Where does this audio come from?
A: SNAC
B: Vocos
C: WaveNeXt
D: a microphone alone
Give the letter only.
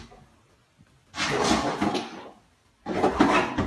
D